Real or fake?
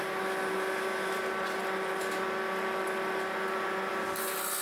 real